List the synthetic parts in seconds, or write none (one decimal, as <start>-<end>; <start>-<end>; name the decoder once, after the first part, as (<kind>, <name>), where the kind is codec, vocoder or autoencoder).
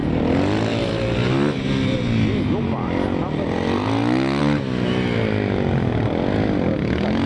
none